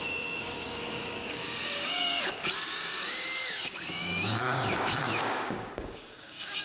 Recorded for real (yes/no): no